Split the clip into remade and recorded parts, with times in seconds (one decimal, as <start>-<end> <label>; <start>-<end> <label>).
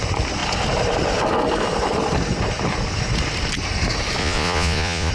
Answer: 0.0-4.2 recorded; 4.2-5.1 remade